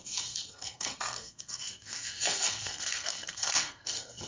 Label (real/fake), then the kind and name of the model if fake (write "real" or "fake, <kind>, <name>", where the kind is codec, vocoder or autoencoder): fake, codec, SNAC